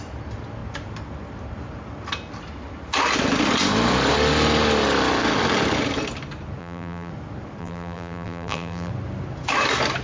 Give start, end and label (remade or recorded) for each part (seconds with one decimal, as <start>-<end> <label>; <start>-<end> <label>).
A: 0.0-6.6 recorded; 6.6-7.1 remade; 7.1-7.6 recorded; 7.6-8.9 remade; 8.9-10.0 recorded